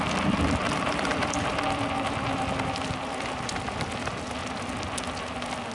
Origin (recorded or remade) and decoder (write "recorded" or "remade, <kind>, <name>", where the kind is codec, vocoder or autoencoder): recorded